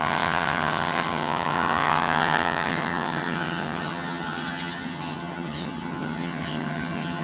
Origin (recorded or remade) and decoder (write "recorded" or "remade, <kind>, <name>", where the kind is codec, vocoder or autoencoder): remade, vocoder, HiFi-GAN